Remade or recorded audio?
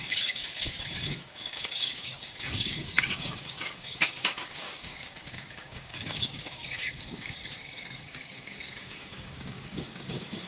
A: remade